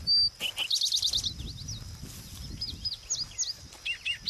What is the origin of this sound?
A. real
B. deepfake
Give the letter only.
A